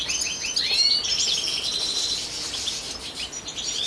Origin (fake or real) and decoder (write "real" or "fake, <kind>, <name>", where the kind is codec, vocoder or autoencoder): real